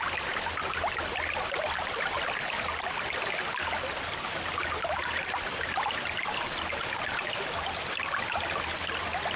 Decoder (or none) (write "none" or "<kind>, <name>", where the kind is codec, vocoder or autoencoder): none